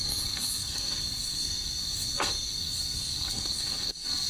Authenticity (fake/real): fake